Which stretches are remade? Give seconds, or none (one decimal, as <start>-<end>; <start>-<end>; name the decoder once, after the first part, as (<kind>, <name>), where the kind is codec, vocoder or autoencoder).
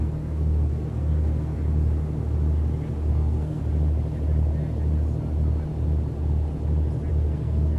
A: 0.0-1.5 (codec, SNAC); 3.1-3.6; 7.1-7.8